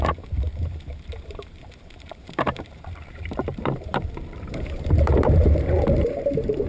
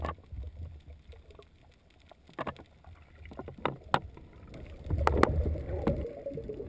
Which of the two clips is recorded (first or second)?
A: second